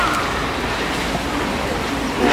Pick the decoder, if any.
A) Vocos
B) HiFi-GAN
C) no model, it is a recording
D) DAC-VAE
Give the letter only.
C